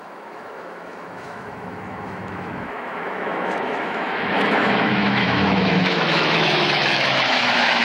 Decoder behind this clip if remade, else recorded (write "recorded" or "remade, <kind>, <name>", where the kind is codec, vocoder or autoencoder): remade, autoencoder, DAC-VAE